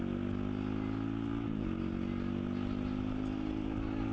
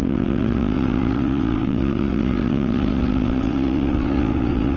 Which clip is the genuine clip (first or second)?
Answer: first